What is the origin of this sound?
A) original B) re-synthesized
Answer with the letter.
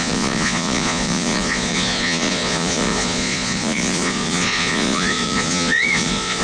B